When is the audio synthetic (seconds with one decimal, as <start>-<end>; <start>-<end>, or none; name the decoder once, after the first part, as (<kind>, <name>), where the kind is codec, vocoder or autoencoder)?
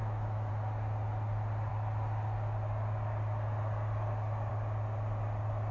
0.0-0.5 (autoencoder, DAC-VAE)